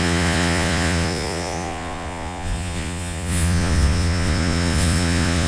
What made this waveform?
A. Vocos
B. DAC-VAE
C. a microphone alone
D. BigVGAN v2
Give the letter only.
A